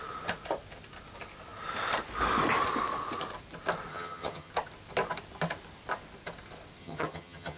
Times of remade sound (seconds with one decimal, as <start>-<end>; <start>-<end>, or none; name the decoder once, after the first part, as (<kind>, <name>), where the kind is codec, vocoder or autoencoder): 3.9-4.5 (vocoder, HiFi-GAN); 6.8-7.6